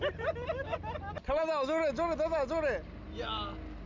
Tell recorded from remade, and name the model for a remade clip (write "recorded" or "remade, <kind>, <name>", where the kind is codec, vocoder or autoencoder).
recorded